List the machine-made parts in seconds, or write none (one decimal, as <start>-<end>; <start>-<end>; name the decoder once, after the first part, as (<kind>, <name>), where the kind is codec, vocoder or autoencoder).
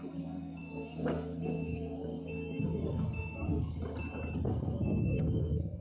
0.0-3.8 (codec, SNAC); 4.5-5.8